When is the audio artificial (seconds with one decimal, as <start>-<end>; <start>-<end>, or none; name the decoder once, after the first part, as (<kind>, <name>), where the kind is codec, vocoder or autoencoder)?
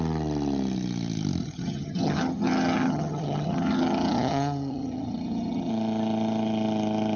1.4-5.7 (vocoder, HiFi-GAN)